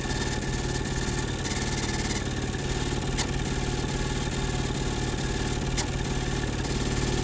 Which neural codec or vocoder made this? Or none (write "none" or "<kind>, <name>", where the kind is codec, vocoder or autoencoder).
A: none